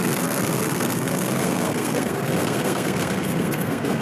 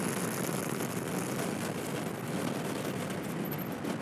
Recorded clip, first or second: second